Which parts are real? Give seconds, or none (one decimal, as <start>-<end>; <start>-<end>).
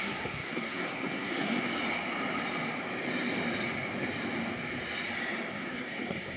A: 1.7-5.5